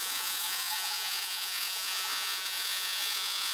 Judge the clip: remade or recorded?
remade